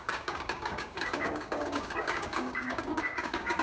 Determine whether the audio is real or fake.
fake